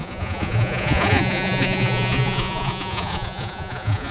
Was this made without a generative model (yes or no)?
no